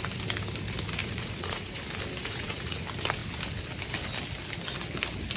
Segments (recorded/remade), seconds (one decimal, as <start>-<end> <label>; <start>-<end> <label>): 0.0-1.0 recorded; 1.0-1.8 remade; 1.8-2.2 recorded; 2.2-2.8 remade; 2.8-5.4 recorded